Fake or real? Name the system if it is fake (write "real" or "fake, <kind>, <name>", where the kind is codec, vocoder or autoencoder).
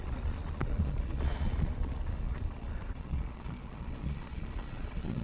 fake, vocoder, Vocos